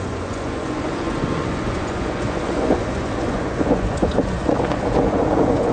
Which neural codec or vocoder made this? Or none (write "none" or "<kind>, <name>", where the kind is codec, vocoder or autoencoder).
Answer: vocoder, Vocos